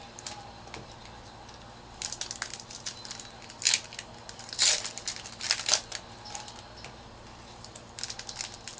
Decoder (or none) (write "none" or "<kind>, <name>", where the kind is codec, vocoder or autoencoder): none